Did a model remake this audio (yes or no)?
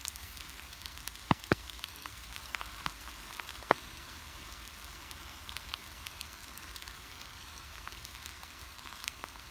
yes